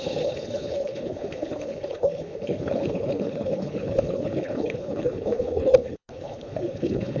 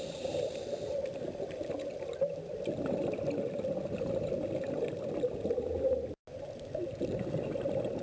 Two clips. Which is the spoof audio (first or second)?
first